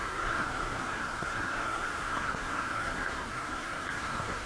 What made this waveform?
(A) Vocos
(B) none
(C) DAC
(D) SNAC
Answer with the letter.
D